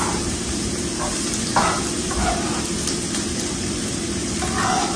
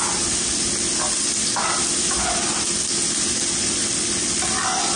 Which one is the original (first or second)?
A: second